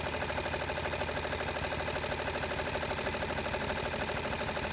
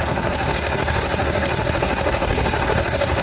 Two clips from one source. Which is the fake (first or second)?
second